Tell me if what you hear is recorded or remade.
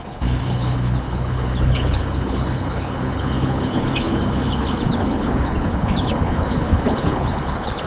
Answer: remade